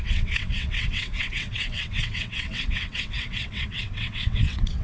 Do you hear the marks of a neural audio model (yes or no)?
yes